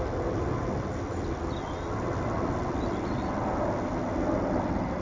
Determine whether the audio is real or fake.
real